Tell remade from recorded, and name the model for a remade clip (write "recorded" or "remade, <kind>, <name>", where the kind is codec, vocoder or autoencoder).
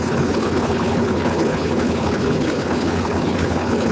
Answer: remade, codec, HILCodec